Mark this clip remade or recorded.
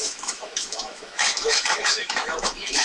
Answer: remade